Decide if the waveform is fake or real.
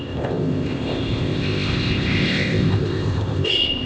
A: fake